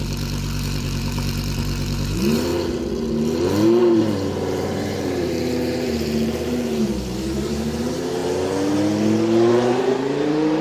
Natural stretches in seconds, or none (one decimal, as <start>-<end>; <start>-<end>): 2.5-3.8; 8.2-9.5